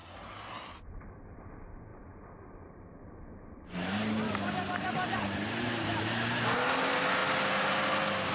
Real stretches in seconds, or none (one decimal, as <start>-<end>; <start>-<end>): 0.0-1.9; 6.0-8.3

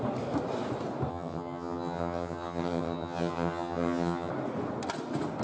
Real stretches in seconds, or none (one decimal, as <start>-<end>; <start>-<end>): 0.0-1.1; 4.3-5.4

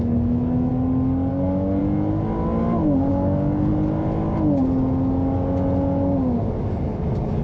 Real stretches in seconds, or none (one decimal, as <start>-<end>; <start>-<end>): 0.7-1.3; 1.8-3.1; 3.7-6.7

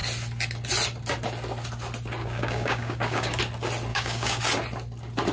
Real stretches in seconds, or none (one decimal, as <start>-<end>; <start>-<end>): 0.0-2.2; 3.4-3.9; 4.4-5.3

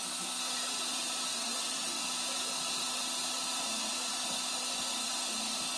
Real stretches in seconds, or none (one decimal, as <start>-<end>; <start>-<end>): 0.0-1.3; 2.0-5.8